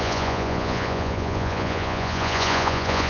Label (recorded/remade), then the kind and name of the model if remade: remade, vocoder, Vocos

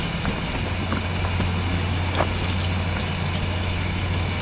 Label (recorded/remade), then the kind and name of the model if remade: recorded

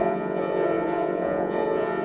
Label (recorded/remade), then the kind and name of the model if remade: remade, vocoder, Vocos